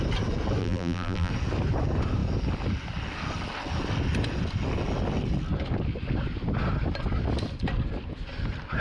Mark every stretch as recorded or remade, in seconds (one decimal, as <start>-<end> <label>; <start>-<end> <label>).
0.0-0.6 recorded; 0.6-1.3 remade; 1.3-8.8 recorded